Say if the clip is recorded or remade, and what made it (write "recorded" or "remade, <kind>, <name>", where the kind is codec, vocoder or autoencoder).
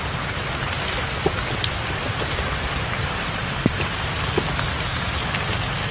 recorded